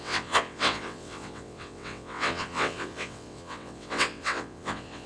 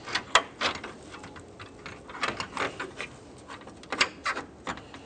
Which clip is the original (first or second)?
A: second